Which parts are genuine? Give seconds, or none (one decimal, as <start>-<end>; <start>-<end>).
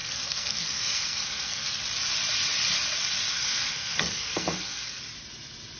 1.8-3.3; 5.0-5.8